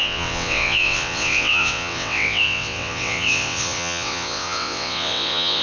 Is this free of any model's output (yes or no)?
no